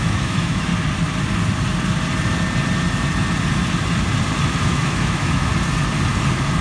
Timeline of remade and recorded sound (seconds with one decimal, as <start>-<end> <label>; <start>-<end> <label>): 0.0-0.7 remade; 0.7-4.7 recorded; 4.7-5.5 remade; 5.5-6.6 recorded